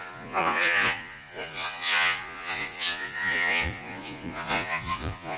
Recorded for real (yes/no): no